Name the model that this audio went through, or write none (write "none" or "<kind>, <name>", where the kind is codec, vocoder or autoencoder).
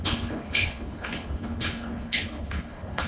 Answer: codec, HILCodec